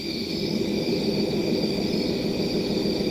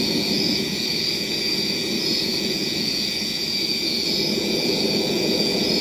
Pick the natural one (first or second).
first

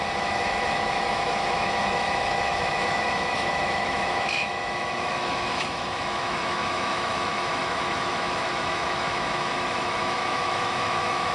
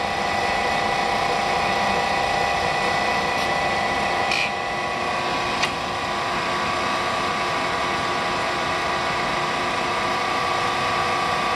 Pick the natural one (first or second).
second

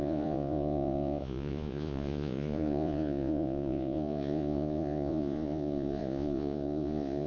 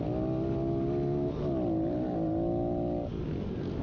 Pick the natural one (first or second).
second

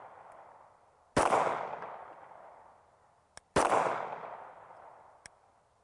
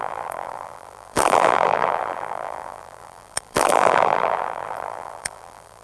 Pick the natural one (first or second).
first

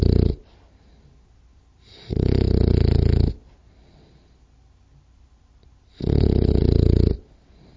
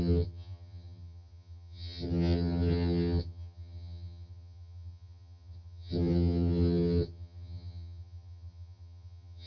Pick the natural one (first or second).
first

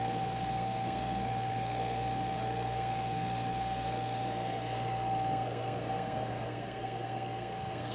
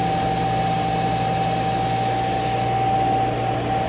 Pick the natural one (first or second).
second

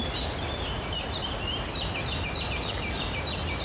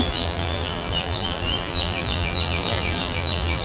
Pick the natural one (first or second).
first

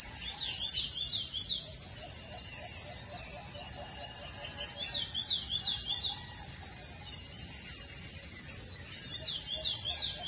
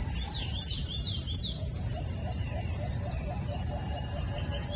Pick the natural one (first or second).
first